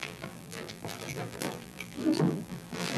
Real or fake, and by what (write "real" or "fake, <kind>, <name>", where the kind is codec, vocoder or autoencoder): fake, vocoder, BigVGAN v2